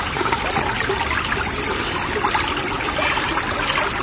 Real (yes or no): yes